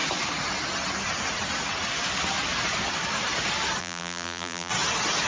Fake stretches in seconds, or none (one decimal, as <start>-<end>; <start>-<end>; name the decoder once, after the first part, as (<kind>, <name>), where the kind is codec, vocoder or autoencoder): 3.8-4.7 (vocoder, BigVGAN v2)